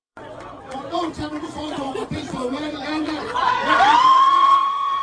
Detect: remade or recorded remade